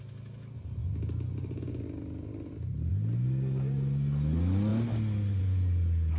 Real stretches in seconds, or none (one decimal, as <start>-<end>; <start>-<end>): 0.0-6.2